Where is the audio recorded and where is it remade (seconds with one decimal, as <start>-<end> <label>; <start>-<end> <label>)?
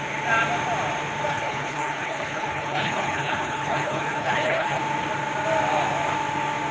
0.0-1.3 recorded; 1.3-4.8 remade; 4.8-6.7 recorded